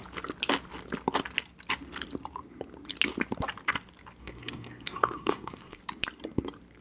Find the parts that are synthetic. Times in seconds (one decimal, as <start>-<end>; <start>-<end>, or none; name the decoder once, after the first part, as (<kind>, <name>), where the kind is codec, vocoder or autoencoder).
4.2-5.8 (codec, SNAC)